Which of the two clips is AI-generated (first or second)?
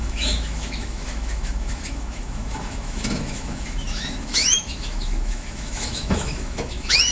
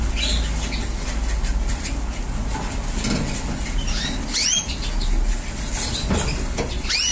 first